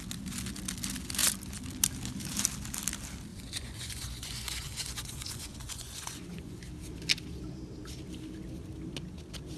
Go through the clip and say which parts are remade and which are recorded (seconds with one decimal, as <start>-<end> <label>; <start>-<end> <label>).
0.0-3.3 recorded; 3.3-6.6 remade; 6.6-9.6 recorded